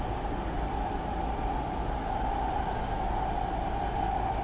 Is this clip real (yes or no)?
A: yes